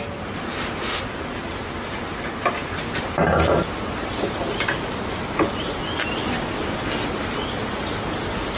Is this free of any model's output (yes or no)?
yes